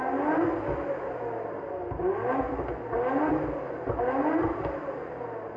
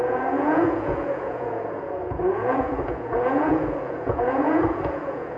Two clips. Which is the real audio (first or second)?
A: first